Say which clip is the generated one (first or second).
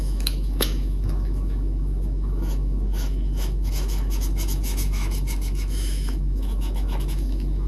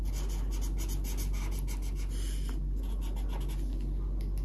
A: first